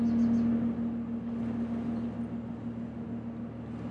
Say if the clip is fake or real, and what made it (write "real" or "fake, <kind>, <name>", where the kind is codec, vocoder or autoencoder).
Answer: real